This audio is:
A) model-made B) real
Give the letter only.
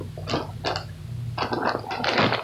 B